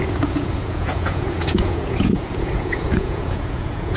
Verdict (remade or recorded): remade